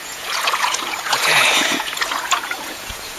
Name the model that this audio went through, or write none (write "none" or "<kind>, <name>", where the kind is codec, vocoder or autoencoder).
vocoder, Vocos